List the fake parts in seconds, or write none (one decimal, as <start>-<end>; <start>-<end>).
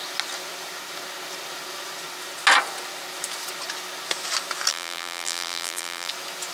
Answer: 4.7-6.1